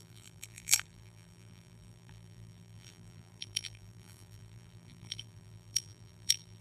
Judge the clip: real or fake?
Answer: fake